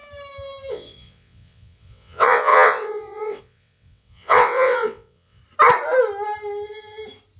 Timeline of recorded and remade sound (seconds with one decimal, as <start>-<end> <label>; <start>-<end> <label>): 0.0-0.7 recorded; 0.7-5.4 remade; 5.4-7.4 recorded